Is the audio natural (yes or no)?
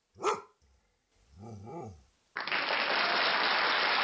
yes